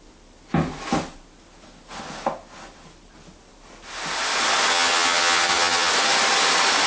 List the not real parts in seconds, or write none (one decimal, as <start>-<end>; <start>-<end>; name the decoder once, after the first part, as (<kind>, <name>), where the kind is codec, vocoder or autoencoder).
4.7-5.9 (vocoder, HiFi-GAN)